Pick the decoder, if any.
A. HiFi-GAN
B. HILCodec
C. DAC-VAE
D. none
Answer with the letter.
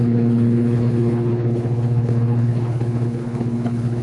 B